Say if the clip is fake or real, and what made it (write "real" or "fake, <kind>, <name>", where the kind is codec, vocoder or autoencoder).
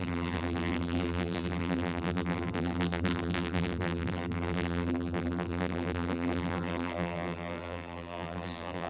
fake, vocoder, BigVGAN v2